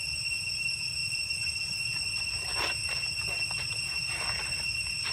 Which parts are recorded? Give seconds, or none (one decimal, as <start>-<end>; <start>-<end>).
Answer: 0.0-5.1